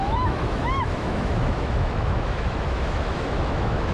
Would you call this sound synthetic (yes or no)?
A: yes